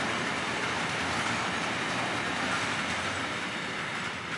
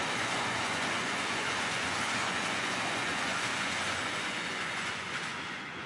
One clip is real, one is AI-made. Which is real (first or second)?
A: first